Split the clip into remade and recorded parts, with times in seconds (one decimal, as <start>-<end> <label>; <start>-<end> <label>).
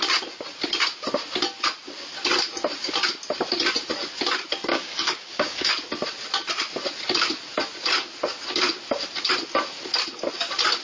0.0-4.7 recorded; 4.7-5.7 remade; 5.7-10.8 recorded